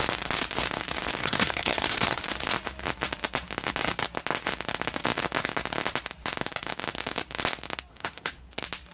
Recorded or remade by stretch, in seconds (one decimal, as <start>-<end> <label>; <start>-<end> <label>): 0.0-1.2 recorded; 1.2-2.2 remade; 2.2-7.9 recorded; 7.9-8.5 remade; 8.5-8.9 recorded